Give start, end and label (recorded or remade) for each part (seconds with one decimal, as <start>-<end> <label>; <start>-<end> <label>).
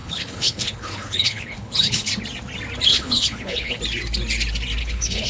0.0-2.1 remade; 2.1-2.9 recorded; 2.9-3.8 remade; 3.8-4.8 recorded; 4.8-5.3 remade